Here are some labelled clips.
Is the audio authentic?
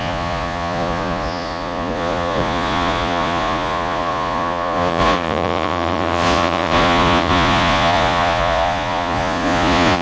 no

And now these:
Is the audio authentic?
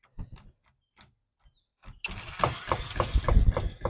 yes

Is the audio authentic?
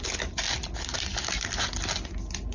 yes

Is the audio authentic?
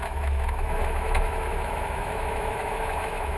no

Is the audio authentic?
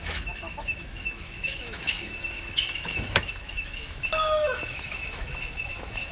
no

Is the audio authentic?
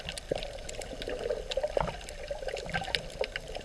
yes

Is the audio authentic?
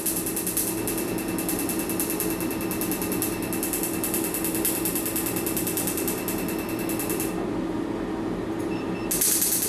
yes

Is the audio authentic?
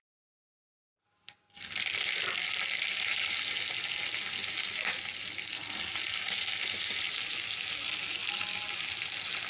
yes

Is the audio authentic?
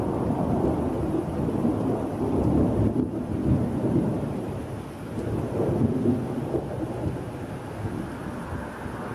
yes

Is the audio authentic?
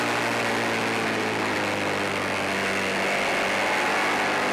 yes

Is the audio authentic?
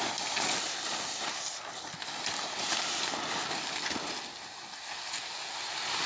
yes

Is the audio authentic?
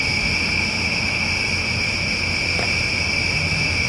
yes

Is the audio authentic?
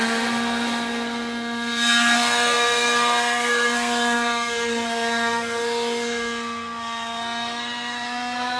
no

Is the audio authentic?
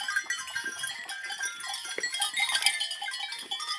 yes